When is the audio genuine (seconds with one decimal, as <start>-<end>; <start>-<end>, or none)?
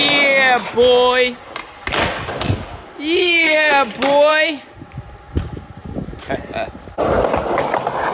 0.0-3.2; 3.7-8.1